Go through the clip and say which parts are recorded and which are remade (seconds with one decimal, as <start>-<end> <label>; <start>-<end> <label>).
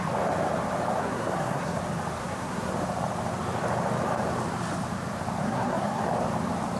0.0-1.0 recorded; 1.0-1.8 remade; 1.8-2.2 recorded; 2.2-2.7 remade; 2.7-5.4 recorded; 5.4-6.0 remade; 6.0-6.8 recorded